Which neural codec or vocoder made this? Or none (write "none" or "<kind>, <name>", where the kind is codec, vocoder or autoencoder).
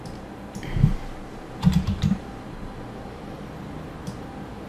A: none